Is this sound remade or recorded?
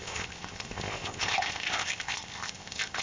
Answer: remade